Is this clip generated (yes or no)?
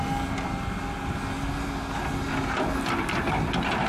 no